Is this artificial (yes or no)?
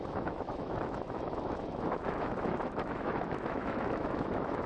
yes